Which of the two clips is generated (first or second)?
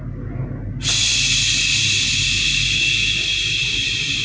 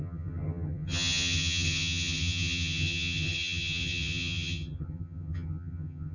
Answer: second